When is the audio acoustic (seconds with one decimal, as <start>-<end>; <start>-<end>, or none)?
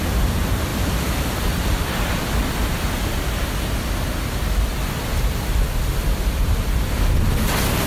0.0-7.9